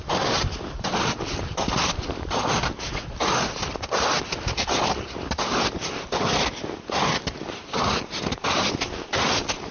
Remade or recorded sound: recorded